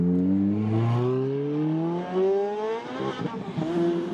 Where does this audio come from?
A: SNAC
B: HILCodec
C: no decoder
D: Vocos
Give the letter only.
C